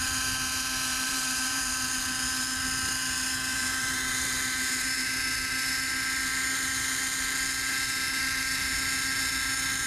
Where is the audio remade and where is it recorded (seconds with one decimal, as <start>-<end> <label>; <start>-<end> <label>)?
0.0-0.9 recorded; 0.9-1.6 remade; 1.6-3.5 recorded; 3.5-5.0 remade; 5.0-9.9 recorded